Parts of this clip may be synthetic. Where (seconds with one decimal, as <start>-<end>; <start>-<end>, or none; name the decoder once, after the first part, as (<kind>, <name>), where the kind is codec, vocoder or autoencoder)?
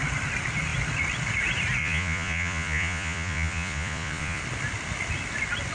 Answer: 1.8-4.4 (vocoder, Vocos)